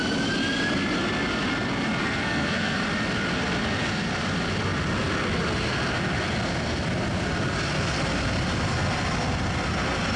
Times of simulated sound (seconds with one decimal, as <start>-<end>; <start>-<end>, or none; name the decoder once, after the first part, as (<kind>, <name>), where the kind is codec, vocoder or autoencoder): 2.0-2.8 (codec, SNAC)